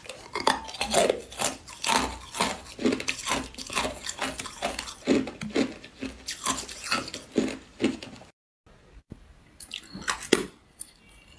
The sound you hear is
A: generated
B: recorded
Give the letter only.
B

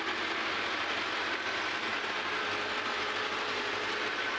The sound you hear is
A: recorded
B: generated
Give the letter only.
A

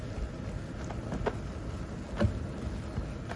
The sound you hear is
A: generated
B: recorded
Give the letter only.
B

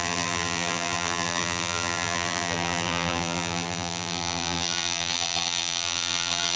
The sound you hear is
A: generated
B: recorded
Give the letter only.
A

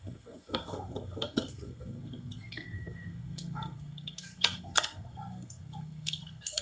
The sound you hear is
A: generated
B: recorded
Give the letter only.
A